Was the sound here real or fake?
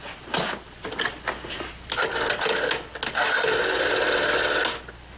real